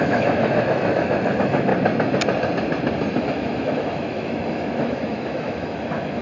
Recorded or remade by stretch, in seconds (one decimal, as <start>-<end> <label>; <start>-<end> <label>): 0.0-1.7 remade; 1.7-3.2 recorded; 3.2-6.2 remade